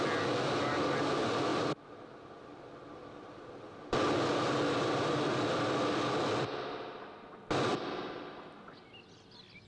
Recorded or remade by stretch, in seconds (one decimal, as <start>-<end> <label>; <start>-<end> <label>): 0.0-9.7 recorded